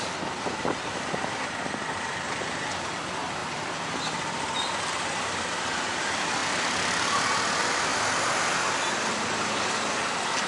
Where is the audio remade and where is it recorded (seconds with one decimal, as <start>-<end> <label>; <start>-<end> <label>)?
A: 0.0-7.9 remade; 7.9-9.1 recorded; 9.1-10.5 remade